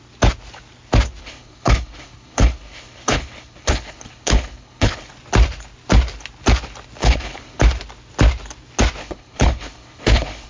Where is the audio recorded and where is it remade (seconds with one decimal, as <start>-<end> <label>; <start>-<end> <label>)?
0.0-1.2 recorded; 1.2-5.1 remade; 5.1-7.0 recorded; 7.0-7.6 remade; 7.6-9.0 recorded; 9.0-10.5 remade